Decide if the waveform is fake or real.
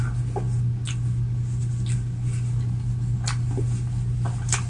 real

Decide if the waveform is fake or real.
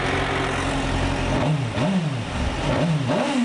real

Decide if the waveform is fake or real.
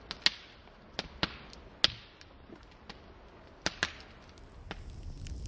real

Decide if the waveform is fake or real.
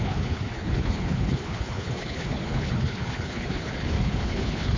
fake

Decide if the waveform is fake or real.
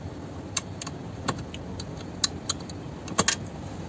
real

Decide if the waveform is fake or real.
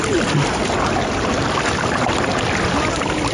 real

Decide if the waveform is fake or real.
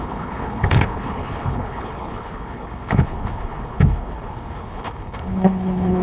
fake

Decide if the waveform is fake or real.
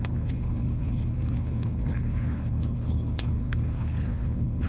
fake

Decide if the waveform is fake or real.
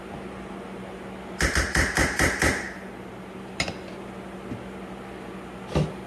real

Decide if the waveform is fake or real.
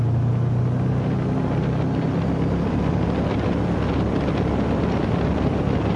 real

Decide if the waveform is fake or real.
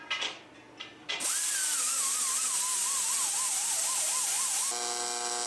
real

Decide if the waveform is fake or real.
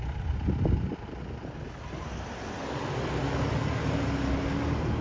real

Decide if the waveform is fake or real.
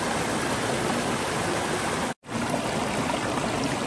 real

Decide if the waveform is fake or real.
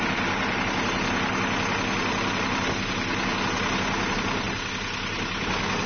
real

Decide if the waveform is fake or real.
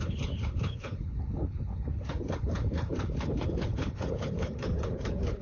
fake